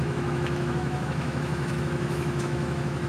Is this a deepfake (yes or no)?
yes